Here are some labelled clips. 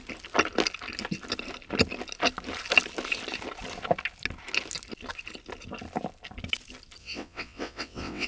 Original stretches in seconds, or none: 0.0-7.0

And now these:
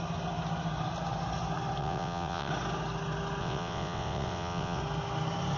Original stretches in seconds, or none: 0.0-1.8; 2.5-3.4; 4.8-5.6

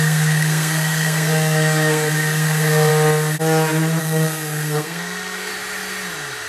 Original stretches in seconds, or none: 2.9-4.0; 5.5-6.5

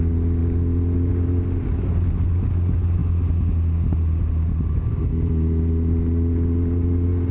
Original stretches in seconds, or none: 0.0-7.3

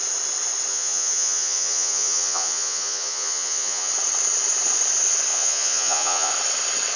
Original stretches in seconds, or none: 0.0-0.7; 3.9-5.3; 6.3-7.0